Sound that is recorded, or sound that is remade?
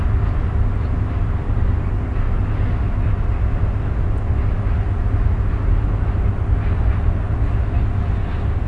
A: recorded